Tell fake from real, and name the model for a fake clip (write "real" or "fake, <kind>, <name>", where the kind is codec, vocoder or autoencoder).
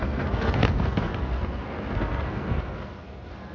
fake, codec, SNAC